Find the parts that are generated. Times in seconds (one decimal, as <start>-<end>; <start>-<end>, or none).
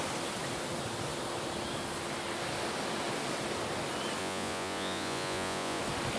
4.2-5.8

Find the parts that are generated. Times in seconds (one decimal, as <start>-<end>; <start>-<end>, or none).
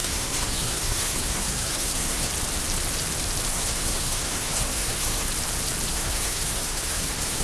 0.0-2.3; 3.5-5.3; 5.9-7.4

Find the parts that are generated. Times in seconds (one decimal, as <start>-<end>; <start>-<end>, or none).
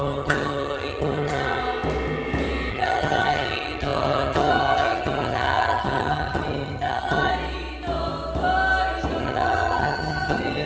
0.0-1.6; 2.7-7.3; 9.2-10.7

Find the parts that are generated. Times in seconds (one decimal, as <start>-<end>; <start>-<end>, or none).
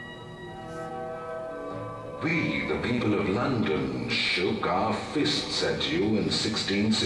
2.3-3.0; 4.2-6.0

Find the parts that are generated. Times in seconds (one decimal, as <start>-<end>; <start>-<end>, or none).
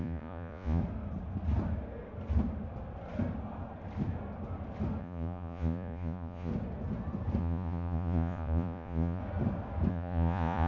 0.0-0.8; 5.0-6.5; 7.4-9.2; 9.9-10.7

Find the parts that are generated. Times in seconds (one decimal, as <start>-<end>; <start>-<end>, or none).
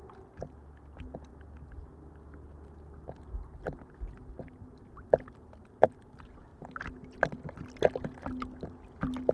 none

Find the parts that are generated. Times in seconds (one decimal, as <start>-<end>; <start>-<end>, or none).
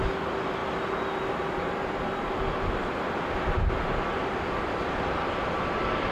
none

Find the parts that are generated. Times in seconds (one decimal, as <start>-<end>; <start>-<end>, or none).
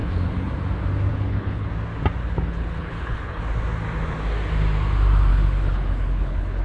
0.0-0.5; 1.1-1.7; 2.2-3.4; 5.3-6.6